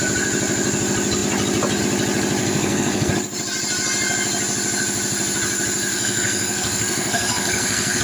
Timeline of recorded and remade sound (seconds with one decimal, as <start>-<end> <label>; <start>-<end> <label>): 0.0-2.4 recorded; 2.4-3.1 remade; 3.1-5.9 recorded; 5.9-8.0 remade